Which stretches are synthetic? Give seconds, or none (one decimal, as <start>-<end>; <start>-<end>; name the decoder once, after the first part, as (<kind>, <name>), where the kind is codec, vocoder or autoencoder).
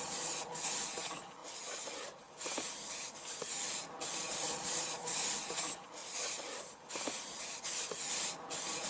0.0-8.9 (vocoder, BigVGAN v2)